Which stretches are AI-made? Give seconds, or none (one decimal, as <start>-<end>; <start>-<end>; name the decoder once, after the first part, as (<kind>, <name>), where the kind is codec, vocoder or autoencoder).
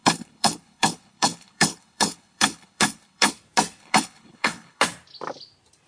0.0-3.3 (codec, HILCodec); 3.8-4.8